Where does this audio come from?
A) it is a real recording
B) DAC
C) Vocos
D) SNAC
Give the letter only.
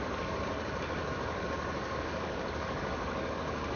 B